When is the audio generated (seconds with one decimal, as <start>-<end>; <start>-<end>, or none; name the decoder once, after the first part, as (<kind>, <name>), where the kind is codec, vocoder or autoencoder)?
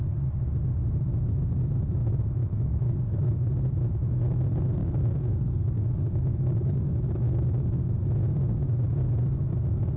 2.0-3.3 (codec, DAC); 4.8-7.9